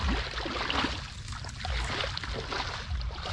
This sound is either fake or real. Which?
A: real